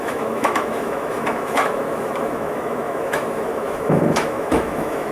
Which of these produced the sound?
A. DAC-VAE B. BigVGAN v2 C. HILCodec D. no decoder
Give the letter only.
A